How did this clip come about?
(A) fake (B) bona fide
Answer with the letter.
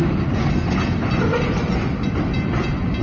B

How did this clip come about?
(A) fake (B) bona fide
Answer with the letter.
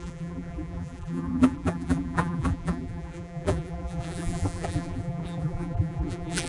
A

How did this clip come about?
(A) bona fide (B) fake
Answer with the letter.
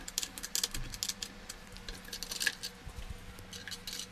A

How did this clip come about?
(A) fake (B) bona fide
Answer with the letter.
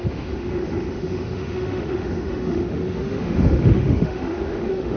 A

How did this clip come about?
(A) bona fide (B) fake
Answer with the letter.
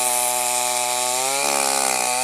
A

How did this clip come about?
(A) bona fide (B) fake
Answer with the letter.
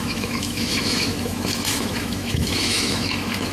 B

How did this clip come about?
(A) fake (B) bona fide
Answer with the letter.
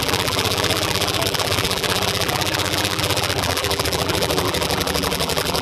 A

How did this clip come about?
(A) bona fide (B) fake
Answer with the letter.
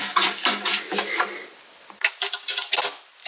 A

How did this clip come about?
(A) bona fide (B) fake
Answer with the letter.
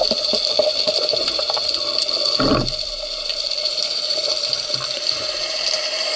B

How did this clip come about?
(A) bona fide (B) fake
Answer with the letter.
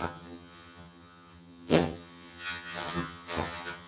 B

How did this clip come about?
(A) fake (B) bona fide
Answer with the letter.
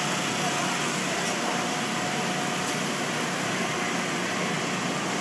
B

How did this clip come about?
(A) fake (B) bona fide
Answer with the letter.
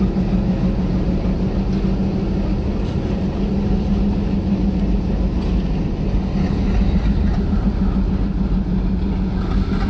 B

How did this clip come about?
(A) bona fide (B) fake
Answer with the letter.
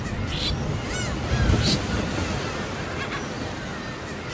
A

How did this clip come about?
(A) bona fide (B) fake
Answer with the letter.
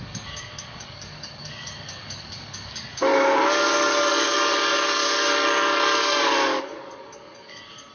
B